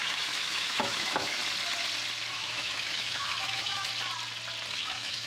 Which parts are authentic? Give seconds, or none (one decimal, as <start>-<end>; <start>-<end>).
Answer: 1.4-2.3; 3.9-4.7